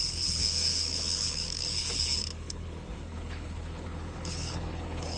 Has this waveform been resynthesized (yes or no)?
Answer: yes